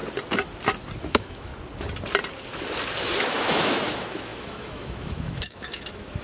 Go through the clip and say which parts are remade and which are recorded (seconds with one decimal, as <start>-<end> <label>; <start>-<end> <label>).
0.0-1.0 recorded; 1.0-1.5 remade; 1.5-3.2 recorded; 3.2-6.2 remade